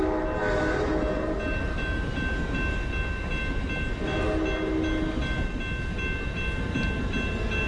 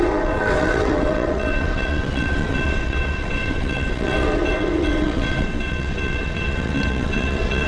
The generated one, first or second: second